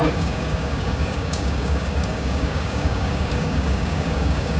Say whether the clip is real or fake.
fake